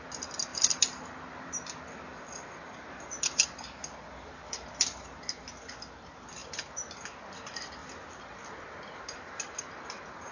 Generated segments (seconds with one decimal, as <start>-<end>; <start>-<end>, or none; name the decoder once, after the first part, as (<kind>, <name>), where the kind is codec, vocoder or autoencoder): 0.5-5.0 (vocoder, BigVGAN v2); 6.4-7.0; 7.8-8.7